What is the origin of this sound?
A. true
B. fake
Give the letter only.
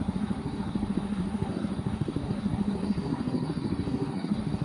B